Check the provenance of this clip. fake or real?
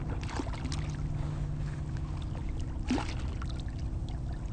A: real